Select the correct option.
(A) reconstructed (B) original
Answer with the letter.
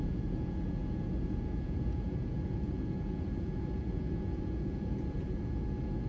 A